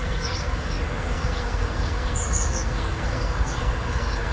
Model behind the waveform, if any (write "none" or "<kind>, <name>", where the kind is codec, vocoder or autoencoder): codec, SNAC